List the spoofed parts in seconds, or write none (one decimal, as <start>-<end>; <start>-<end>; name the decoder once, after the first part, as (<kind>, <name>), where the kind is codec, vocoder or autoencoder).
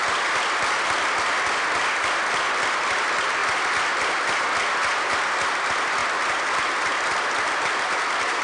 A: none